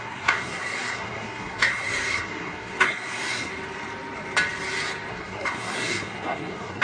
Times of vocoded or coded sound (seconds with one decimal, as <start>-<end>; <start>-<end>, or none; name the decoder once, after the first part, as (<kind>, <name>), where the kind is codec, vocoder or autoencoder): 0.0-3.5 (codec, SNAC); 5.1-6.8